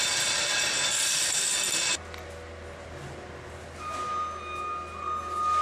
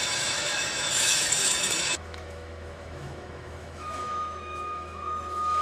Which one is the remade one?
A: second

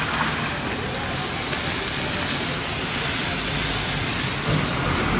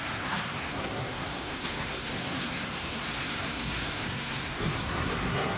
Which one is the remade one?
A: second